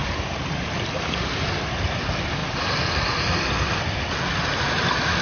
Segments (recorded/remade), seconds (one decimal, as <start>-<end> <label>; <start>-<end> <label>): 0.0-5.2 recorded